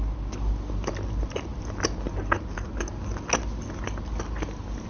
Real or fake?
real